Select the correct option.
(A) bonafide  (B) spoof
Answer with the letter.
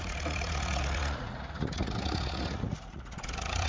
B